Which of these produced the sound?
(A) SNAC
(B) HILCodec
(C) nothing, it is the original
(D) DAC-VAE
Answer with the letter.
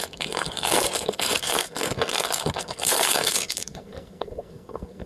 A